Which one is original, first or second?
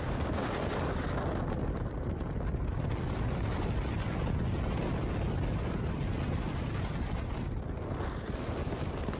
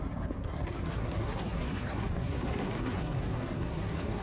first